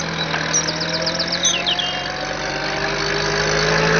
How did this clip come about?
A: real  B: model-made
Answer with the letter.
A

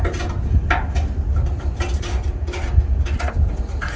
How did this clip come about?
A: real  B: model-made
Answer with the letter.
A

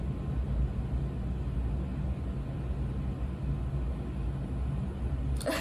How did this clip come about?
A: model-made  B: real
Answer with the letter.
B